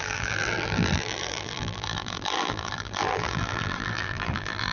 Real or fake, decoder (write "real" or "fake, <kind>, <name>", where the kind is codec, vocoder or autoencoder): fake, vocoder, BigVGAN v2